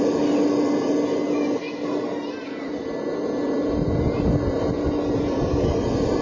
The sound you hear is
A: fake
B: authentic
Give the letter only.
B